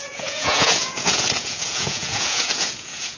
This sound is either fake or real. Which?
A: fake